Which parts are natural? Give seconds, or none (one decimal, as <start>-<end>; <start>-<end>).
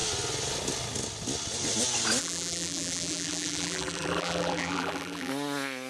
0.0-2.2; 5.3-5.9